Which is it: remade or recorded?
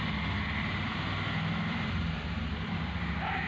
recorded